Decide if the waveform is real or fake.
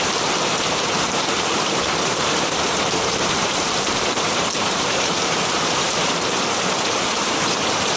fake